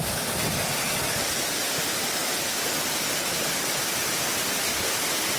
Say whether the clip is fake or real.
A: real